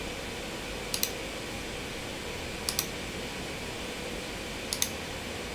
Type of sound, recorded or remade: recorded